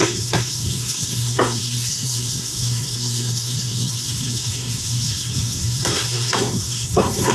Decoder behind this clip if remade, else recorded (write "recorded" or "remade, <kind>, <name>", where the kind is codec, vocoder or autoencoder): remade, codec, SNAC